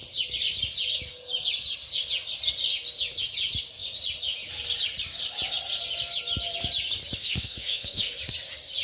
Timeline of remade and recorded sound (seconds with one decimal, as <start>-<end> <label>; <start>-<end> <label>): 0.0-7.2 recorded; 7.2-8.2 remade; 8.2-8.8 recorded